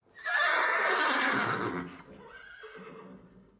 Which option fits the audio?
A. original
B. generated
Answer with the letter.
A